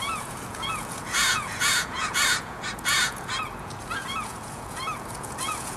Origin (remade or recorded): remade